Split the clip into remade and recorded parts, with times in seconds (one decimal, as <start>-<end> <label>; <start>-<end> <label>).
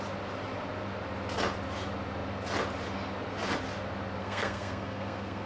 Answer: 0.0-4.2 recorded; 4.2-5.5 remade